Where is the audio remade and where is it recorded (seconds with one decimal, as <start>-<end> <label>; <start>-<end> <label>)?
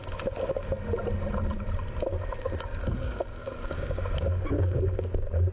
0.0-2.1 recorded; 2.1-5.5 remade